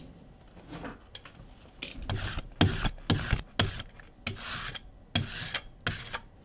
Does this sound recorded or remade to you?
recorded